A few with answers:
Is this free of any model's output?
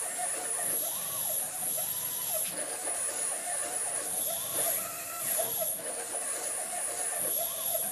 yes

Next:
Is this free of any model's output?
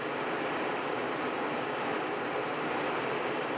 yes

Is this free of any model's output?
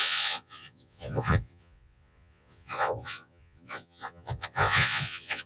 no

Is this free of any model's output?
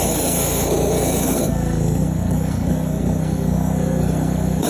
no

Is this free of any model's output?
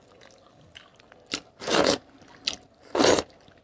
yes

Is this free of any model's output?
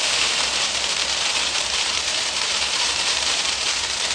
no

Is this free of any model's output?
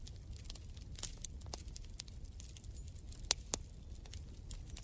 yes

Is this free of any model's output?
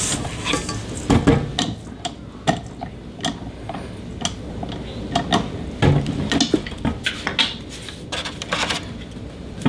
yes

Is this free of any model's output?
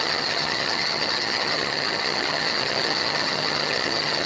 no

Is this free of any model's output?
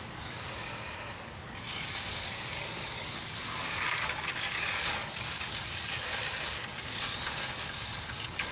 no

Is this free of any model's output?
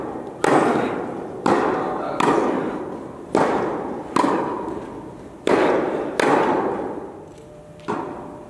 yes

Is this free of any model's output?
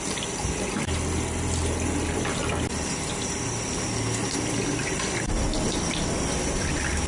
no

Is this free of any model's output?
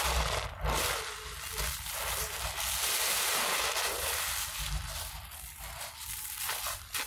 yes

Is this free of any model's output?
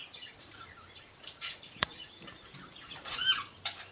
no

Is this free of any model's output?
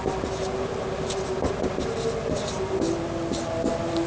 yes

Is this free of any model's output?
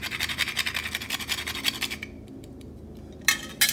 yes